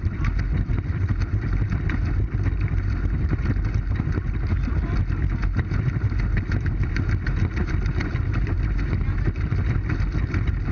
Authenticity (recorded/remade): recorded